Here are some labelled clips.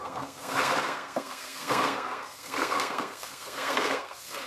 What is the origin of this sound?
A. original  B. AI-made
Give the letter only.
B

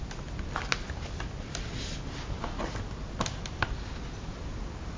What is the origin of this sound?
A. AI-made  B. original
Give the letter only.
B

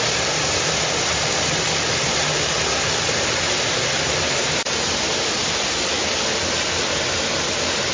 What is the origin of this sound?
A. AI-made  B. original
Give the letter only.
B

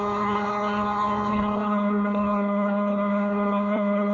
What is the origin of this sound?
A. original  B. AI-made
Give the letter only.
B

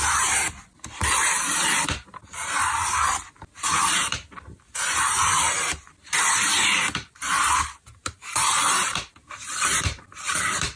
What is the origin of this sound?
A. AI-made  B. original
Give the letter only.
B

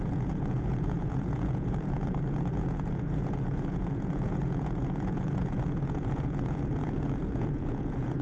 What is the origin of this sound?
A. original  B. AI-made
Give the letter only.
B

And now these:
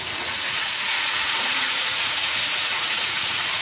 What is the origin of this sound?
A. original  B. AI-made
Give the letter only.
B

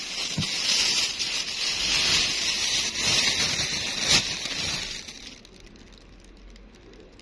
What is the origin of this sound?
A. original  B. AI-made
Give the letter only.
A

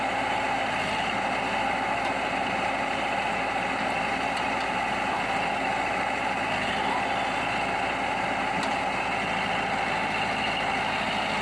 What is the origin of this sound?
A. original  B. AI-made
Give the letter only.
A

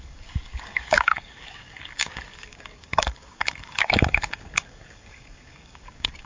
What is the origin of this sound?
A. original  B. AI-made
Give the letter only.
B